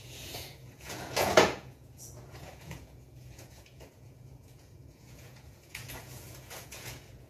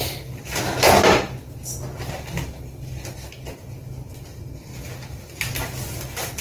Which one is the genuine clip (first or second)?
second